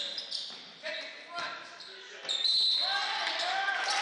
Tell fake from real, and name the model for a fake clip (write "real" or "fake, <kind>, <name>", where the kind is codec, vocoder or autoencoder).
real